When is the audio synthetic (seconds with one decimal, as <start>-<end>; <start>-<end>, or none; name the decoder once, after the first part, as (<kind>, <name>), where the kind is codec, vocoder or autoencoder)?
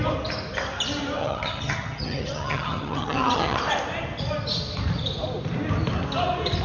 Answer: 1.2-3.6 (vocoder, HiFi-GAN)